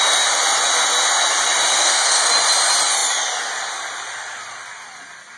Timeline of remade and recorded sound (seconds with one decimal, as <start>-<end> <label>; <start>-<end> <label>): 0.0-1.7 recorded; 1.7-2.3 remade; 2.3-5.4 recorded